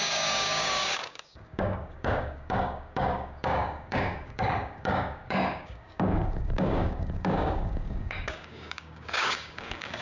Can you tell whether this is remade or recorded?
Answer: remade